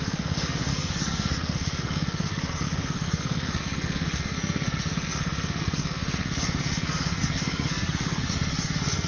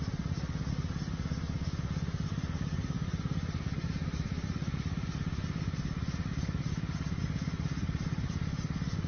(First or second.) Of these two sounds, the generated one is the first